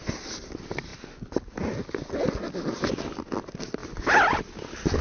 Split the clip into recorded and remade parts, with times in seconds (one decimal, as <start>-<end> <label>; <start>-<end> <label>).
0.0-5.0 recorded